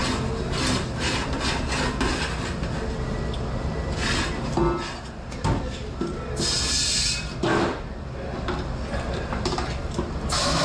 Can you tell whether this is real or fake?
real